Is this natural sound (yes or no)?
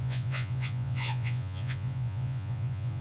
no